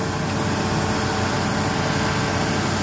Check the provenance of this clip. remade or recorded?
recorded